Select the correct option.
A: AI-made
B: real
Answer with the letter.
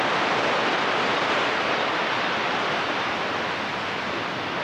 B